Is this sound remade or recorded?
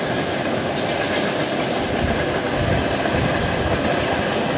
recorded